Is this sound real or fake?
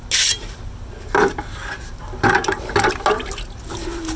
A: real